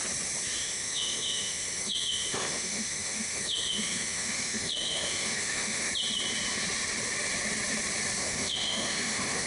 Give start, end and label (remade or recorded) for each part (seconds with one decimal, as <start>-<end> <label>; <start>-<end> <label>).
0.0-0.6 recorded; 0.6-5.9 remade; 5.9-8.2 recorded; 8.2-9.5 remade